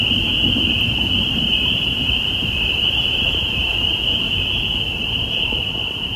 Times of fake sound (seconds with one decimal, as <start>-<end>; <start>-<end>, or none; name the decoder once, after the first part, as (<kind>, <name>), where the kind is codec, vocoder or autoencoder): 0.0-3.6 (vocoder, BigVGAN v2); 4.3-6.2